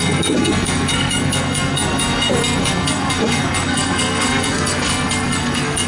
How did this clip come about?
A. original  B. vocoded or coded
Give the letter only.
B